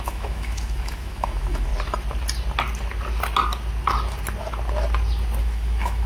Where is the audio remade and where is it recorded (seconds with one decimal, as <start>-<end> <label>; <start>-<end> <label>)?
0.0-1.7 remade; 1.7-5.4 recorded; 5.4-6.1 remade